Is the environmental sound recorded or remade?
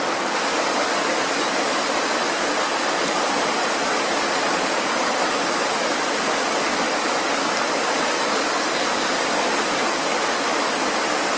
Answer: recorded